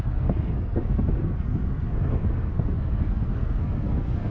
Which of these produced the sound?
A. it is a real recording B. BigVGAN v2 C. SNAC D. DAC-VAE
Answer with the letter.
C